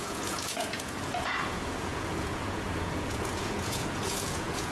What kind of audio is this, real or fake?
fake